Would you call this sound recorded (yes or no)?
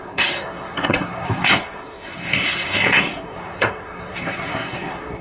no